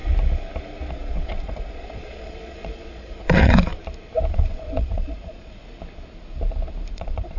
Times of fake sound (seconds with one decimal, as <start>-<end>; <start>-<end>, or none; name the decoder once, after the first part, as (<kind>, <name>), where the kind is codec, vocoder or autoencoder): 0.9-3.7 (vocoder, Vocos); 4.3-5.6; 6.9-7.4